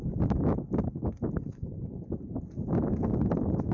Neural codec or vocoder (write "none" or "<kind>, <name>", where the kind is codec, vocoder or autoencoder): none